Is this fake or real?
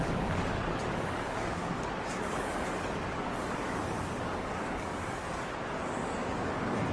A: fake